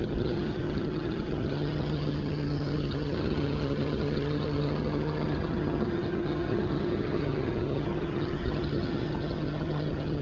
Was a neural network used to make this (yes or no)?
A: yes